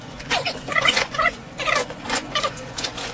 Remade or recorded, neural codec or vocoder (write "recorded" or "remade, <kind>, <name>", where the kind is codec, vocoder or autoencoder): remade, vocoder, Vocos